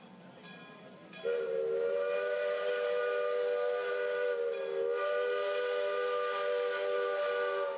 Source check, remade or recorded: recorded